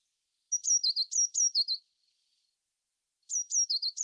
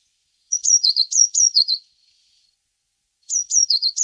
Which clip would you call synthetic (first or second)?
second